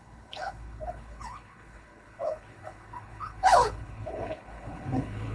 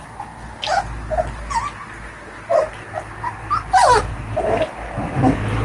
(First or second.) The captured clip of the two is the second